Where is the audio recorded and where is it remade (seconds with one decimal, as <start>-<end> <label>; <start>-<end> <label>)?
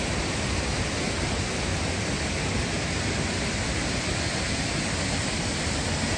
0.0-1.7 remade; 1.7-5.4 recorded; 5.4-6.2 remade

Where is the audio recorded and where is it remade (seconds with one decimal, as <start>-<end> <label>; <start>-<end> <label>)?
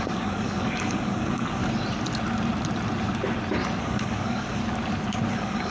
0.0-1.6 remade; 1.6-3.8 recorded; 3.8-4.6 remade; 4.6-5.3 recorded; 5.3-5.7 remade